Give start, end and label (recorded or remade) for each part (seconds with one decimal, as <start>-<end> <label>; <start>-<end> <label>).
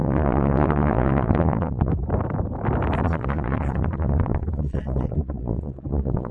0.0-1.9 remade; 1.9-3.0 recorded; 3.0-6.3 remade